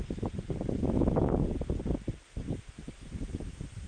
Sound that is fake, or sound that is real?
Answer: real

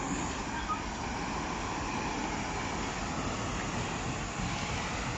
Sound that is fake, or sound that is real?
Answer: real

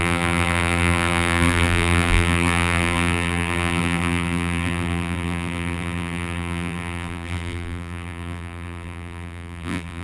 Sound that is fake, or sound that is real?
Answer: fake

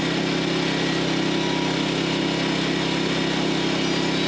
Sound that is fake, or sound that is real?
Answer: real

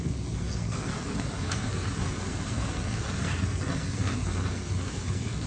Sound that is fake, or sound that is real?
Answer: fake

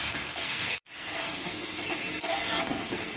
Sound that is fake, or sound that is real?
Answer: fake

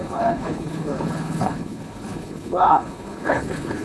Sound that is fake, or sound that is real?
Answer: fake